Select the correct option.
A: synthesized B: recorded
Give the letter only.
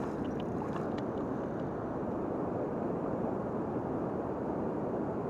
B